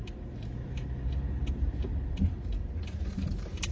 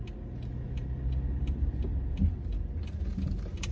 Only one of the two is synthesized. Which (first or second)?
first